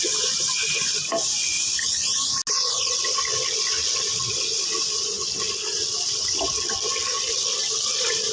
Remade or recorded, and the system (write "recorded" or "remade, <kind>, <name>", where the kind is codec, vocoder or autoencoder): recorded